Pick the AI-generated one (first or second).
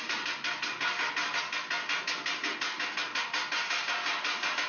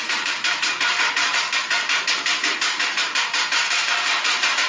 second